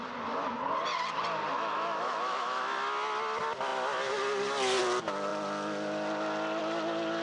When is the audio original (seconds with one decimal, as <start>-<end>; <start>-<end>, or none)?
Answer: 0.0-1.5; 2.6-7.2